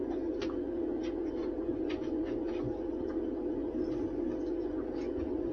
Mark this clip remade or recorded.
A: remade